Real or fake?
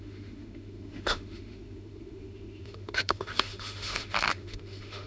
fake